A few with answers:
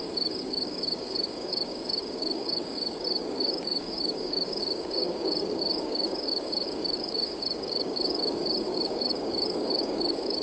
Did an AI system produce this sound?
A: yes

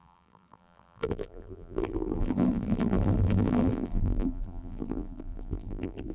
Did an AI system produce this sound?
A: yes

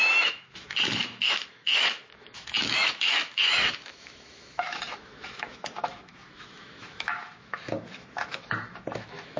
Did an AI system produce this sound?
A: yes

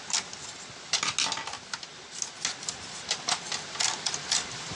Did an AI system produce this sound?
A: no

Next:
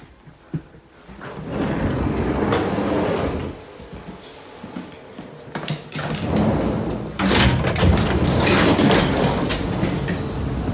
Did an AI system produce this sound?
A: no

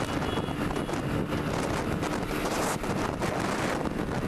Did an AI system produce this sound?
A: no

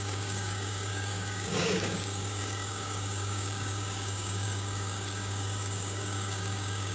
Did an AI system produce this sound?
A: yes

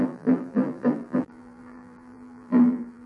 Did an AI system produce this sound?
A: yes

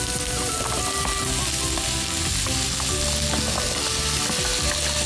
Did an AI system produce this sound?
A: no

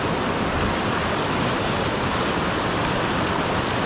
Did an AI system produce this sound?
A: no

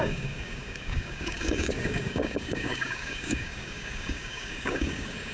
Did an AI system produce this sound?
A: yes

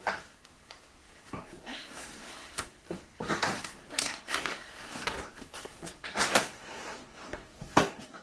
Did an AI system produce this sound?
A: yes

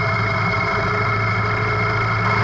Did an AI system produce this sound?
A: no